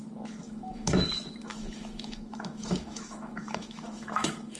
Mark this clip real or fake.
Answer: fake